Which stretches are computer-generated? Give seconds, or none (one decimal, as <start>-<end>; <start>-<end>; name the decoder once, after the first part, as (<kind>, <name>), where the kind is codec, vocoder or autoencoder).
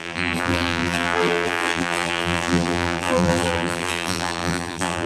0.0-5.1 (vocoder, BigVGAN v2)